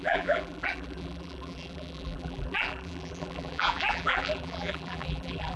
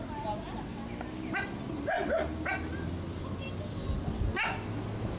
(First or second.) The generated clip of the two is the first